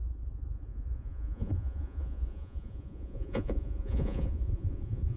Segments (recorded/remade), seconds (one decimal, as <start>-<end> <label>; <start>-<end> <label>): 0.0-5.2 remade